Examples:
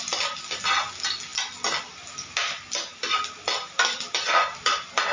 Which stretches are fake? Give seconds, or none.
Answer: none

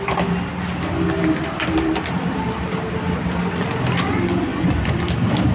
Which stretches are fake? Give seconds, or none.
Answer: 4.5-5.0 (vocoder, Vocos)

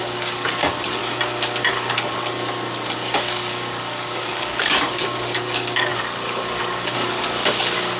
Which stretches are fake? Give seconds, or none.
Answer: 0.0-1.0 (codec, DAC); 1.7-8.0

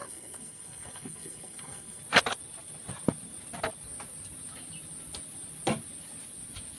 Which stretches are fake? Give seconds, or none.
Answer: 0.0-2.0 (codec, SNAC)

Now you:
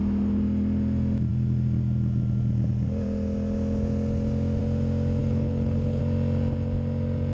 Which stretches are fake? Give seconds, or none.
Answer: 5.2-6.0 (codec, HILCodec)